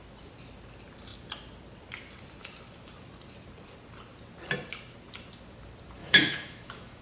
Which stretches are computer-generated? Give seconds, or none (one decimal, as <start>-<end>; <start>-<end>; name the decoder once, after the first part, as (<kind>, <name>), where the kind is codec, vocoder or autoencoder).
6.0-7.0 (autoencoder, DAC-VAE)